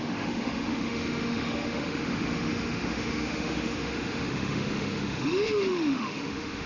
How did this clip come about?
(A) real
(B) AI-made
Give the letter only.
B